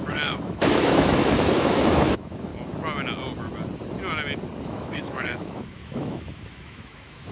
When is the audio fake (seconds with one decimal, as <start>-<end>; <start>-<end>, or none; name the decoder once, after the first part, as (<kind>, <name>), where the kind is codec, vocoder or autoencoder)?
0.0-2.5 (autoencoder, DAC-VAE); 4.6-7.3